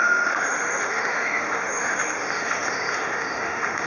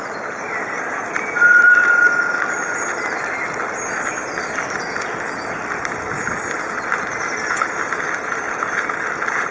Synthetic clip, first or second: first